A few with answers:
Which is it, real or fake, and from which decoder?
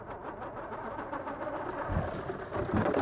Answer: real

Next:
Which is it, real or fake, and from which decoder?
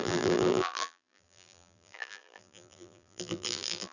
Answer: fake, vocoder, BigVGAN v2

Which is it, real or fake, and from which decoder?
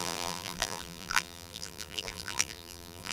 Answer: fake, vocoder, BigVGAN v2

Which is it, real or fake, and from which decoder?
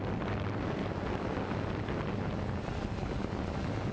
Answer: real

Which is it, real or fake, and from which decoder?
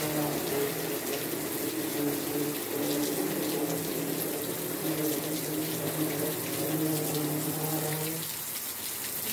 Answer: real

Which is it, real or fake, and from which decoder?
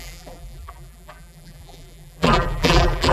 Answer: fake, vocoder, BigVGAN v2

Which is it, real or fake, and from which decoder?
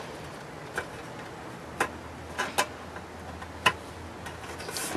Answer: real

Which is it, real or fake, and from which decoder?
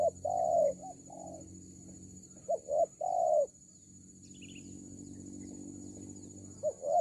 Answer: real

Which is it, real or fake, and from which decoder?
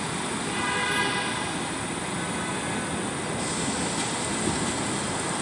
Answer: real